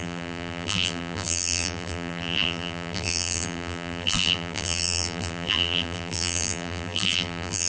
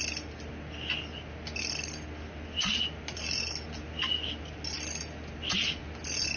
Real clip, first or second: second